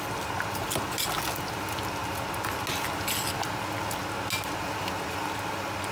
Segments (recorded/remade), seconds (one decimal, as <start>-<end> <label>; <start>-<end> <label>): 0.0-5.9 recorded